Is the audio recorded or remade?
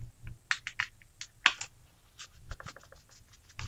recorded